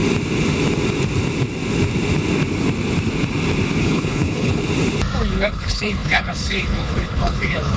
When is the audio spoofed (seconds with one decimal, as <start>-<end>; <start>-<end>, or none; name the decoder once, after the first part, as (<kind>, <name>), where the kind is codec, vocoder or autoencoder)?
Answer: 3.8-4.6 (codec, HILCodec); 5.3-7.8